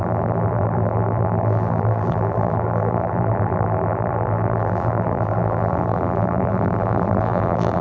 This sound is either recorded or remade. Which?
remade